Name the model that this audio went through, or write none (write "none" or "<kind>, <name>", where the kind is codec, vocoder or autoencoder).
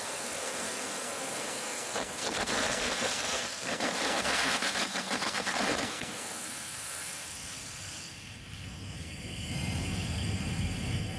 codec, SNAC